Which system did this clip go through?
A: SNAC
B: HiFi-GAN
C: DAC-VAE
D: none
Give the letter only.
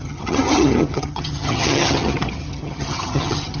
B